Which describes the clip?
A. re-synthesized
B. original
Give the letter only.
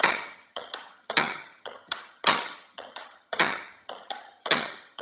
A